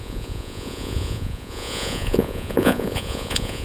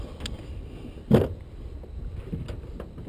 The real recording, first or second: second